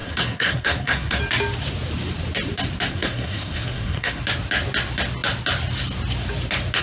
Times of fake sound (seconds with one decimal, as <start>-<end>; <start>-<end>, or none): 0.0-1.2; 2.9-4.2